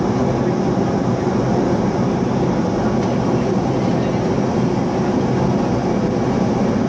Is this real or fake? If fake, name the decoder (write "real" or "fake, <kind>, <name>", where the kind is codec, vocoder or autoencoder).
real